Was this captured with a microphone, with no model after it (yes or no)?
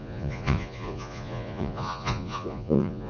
no